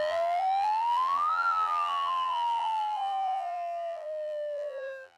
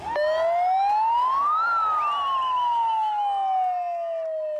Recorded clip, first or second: second